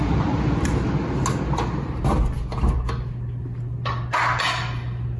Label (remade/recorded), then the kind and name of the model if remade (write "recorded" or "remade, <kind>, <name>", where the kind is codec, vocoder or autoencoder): recorded